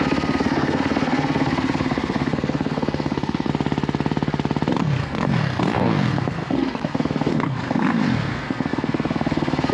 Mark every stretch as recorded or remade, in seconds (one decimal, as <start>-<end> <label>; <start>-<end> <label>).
0.0-3.5 remade; 3.5-4.8 recorded; 4.8-9.7 remade